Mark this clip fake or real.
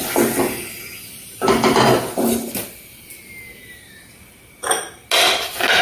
real